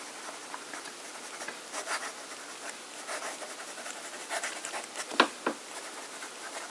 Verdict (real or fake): real